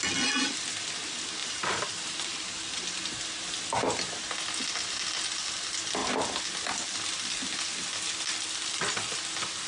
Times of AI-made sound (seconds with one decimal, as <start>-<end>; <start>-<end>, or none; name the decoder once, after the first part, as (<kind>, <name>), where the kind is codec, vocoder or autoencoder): 1.4-3.2 (vocoder, BigVGAN v2)